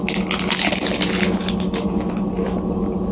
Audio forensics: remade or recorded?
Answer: recorded